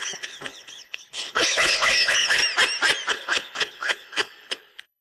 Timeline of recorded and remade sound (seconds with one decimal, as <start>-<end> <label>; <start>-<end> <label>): 0.0-2.4 remade; 2.4-3.1 recorded; 3.1-5.0 remade